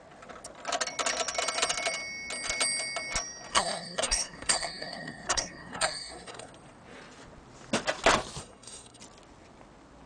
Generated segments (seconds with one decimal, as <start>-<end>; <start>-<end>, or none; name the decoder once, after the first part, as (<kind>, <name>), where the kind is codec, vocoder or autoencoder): 3.5-6.5 (codec, SNAC); 8.4-9.0